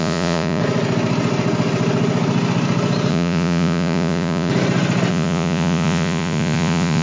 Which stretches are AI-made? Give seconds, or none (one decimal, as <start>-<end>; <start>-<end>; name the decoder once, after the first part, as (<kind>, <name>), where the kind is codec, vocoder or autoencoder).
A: 0.0-0.6 (vocoder, Vocos); 3.1-4.5; 5.1-7.0